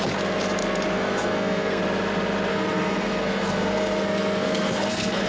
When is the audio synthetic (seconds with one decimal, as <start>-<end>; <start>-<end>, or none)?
0.6-1.8; 2.5-5.3